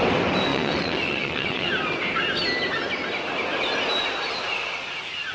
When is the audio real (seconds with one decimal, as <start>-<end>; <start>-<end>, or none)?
0.0-0.5; 1.7-5.3